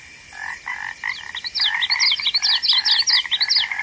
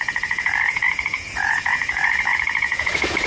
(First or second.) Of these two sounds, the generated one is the second